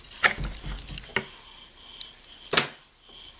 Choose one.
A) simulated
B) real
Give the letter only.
B